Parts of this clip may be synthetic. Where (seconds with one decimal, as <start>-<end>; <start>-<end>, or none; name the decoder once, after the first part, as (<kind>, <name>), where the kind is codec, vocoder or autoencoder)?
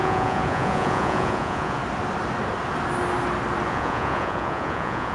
0.0-1.8 (vocoder, Vocos); 3.7-5.1